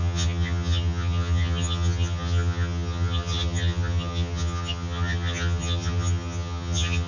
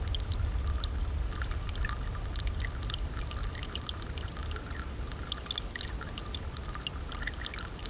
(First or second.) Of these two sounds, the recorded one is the second